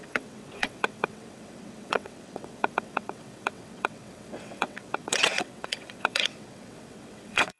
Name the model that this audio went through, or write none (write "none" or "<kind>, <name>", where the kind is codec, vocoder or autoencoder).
vocoder, WaveNeXt